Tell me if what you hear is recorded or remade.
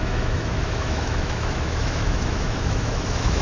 remade